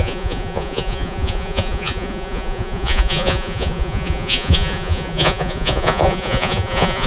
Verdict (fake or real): fake